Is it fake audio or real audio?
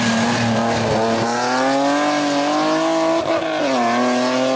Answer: real